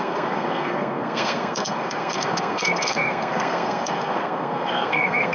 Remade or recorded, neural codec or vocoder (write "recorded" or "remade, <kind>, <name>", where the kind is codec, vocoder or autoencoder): remade, codec, SNAC